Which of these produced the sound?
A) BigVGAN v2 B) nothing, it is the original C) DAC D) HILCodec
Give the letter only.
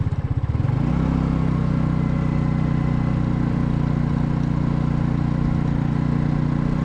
B